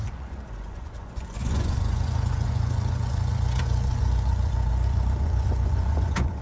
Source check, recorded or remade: remade